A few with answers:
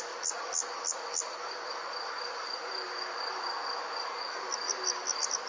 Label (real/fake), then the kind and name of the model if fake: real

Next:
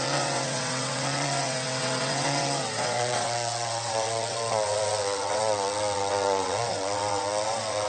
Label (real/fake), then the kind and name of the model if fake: fake, vocoder, WaveNeXt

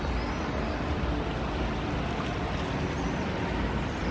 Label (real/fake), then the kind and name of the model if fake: real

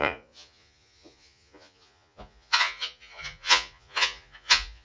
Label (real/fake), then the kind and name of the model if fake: fake, vocoder, Vocos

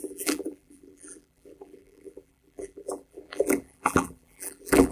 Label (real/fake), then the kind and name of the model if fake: fake, vocoder, BigVGAN v2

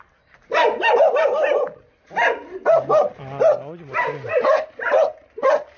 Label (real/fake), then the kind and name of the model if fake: real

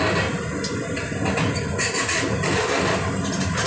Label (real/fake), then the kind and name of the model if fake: real